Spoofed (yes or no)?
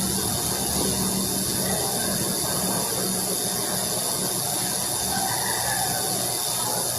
no